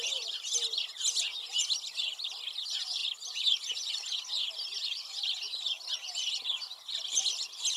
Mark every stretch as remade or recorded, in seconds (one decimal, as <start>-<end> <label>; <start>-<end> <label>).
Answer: 0.0-7.8 recorded